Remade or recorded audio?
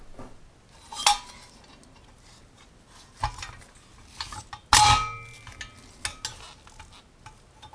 recorded